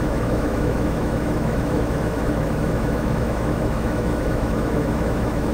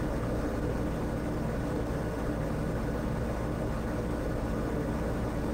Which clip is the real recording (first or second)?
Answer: second